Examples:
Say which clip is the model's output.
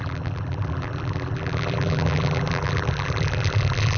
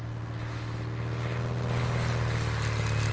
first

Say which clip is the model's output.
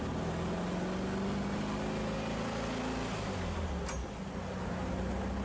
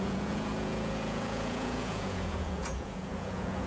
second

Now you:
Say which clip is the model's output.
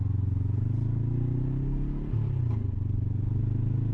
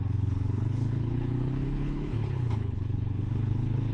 second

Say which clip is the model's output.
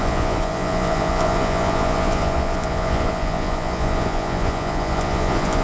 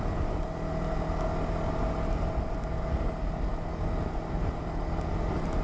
first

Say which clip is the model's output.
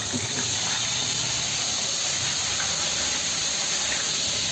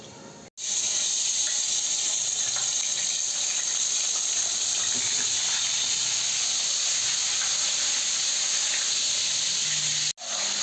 first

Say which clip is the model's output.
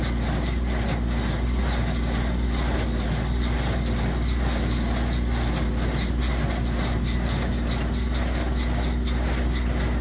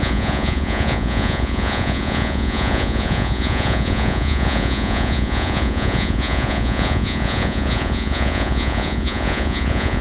second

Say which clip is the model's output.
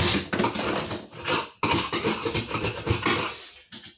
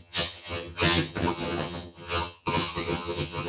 second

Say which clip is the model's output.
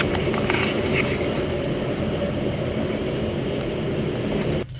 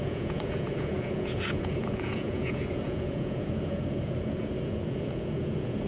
second